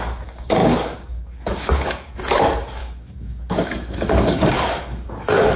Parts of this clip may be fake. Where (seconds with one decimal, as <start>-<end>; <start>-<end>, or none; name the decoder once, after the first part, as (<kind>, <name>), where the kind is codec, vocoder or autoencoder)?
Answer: 0.0-5.6 (codec, DAC)